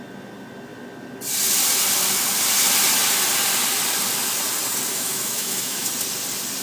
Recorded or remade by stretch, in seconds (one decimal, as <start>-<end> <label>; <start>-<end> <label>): 0.0-4.9 recorded; 4.9-5.9 remade; 5.9-6.6 recorded